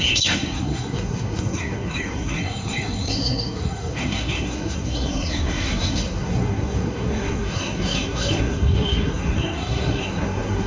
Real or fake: fake